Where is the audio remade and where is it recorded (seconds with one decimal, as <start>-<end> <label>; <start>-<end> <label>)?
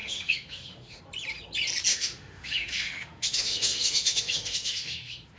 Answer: 0.0-1.0 remade; 1.0-1.9 recorded; 1.9-5.4 remade